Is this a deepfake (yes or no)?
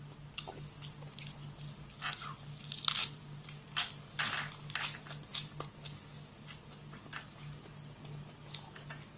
no